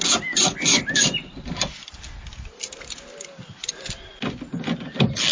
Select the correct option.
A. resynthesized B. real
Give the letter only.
B